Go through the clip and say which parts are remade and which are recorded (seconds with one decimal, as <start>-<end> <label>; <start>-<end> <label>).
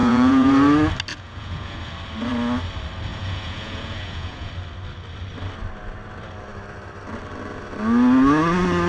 0.0-0.5 remade; 0.5-1.1 recorded; 1.1-1.8 remade; 1.8-3.1 recorded; 3.1-4.5 remade; 4.5-8.9 recorded